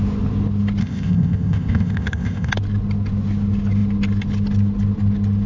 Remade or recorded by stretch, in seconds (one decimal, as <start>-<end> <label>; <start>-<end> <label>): 0.0-0.8 recorded; 0.8-2.5 remade; 2.5-5.5 recorded

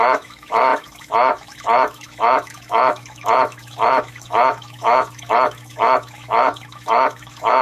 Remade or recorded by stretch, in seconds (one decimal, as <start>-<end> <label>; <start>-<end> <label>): 0.0-7.6 remade

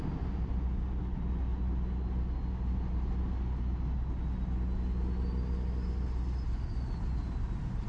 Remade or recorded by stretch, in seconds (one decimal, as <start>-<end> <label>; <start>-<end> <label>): 0.0-7.9 recorded

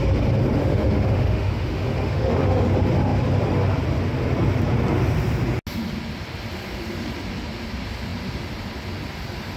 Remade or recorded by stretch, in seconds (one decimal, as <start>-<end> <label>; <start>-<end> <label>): 0.0-0.6 recorded; 0.6-2.7 remade; 2.7-9.6 recorded

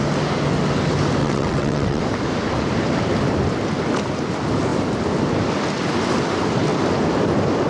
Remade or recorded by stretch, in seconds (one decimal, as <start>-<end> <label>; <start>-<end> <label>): 0.0-1.2 recorded; 1.2-2.0 remade; 2.0-7.7 recorded